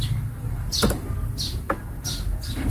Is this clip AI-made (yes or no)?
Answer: no